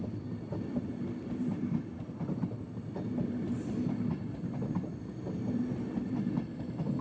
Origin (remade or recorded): recorded